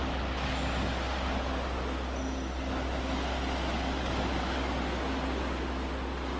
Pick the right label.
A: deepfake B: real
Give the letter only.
B